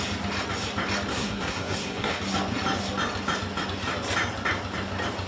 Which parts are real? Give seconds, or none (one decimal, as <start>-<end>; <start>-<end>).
0.0-1.1; 2.2-5.3